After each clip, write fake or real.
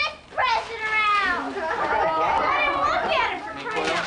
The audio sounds real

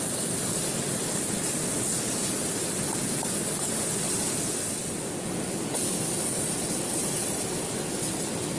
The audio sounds fake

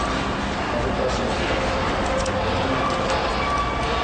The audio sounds real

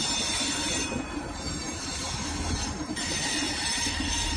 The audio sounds fake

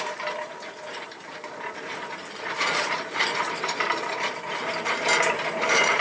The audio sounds fake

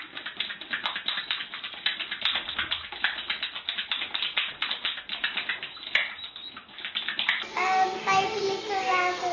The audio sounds real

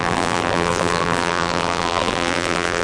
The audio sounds fake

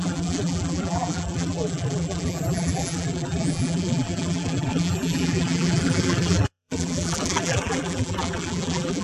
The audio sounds fake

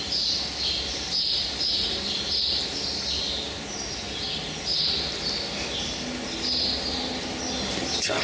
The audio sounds real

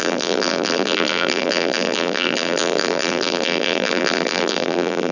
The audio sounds fake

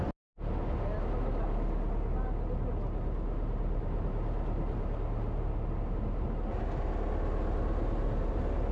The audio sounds real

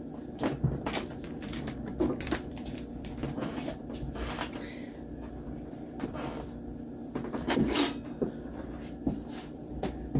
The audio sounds fake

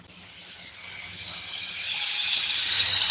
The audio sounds fake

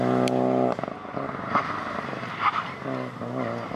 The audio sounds real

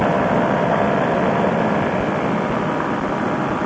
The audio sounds real